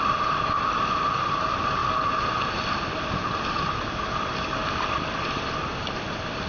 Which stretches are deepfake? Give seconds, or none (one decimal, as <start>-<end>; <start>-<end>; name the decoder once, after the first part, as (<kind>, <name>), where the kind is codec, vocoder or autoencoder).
0.0-1.8 (vocoder, BigVGAN v2); 4.0-6.5